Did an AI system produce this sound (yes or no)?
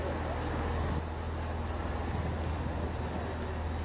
no